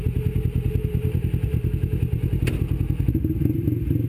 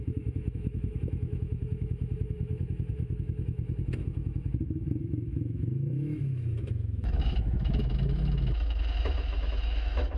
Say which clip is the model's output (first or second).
second